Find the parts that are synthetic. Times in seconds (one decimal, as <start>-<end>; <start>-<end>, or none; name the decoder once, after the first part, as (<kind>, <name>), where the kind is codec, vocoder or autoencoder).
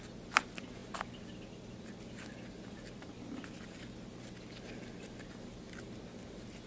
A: none